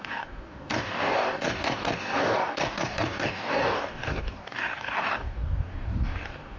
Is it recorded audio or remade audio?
remade